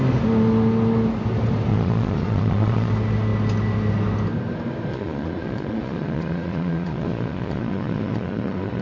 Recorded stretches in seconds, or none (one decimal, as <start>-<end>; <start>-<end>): 0.0-1.7; 2.9-4.9